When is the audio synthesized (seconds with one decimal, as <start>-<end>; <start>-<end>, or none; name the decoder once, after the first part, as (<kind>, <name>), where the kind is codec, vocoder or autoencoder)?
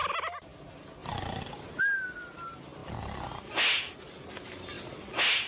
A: none